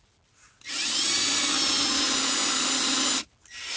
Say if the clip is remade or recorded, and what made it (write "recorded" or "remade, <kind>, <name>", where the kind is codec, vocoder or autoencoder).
recorded